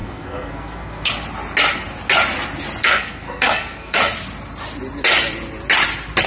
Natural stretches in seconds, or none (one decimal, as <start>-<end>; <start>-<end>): 1.1-2.8; 4.0-6.3